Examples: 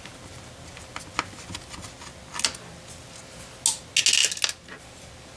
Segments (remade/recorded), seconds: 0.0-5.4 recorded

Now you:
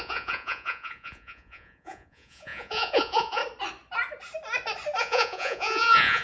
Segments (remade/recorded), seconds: 0.0-3.4 remade; 3.4-5.0 recorded; 5.0-6.2 remade

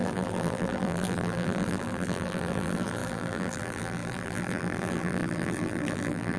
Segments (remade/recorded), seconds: 0.0-6.4 remade

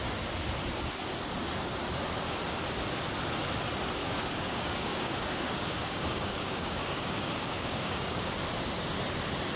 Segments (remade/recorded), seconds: 0.0-4.0 recorded; 4.0-8.3 remade; 8.3-9.6 recorded

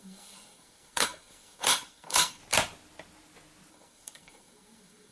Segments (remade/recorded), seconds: 0.0-2.4 remade; 2.4-3.7 recorded; 3.7-5.1 remade

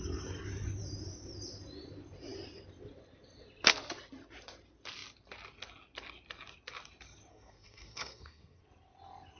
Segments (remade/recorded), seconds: 0.0-7.3 recorded; 7.3-8.6 remade; 8.6-9.4 recorded

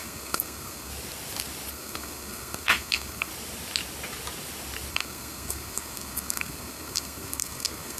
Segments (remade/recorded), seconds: 0.0-0.9 remade; 0.9-1.7 recorded; 1.7-3.3 remade; 3.3-4.9 recorded; 4.9-8.0 remade